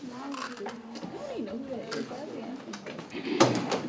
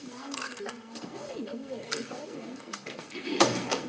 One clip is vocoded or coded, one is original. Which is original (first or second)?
first